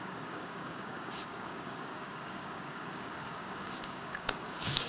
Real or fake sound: fake